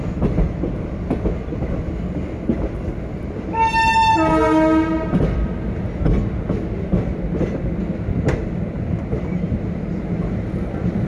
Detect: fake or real real